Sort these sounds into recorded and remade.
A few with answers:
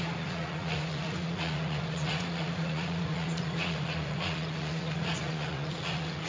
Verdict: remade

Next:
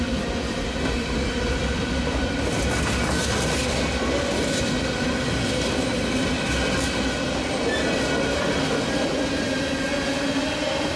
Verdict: recorded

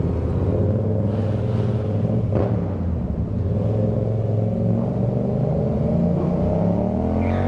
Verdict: recorded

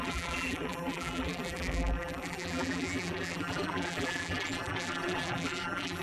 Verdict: remade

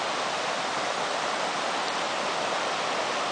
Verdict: recorded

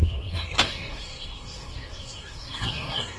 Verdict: remade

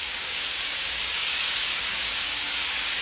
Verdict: remade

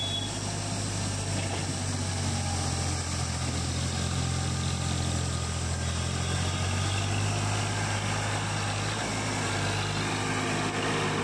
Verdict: recorded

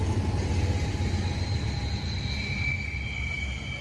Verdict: recorded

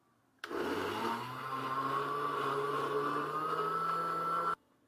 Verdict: recorded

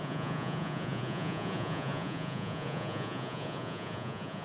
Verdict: remade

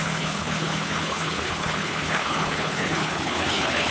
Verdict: remade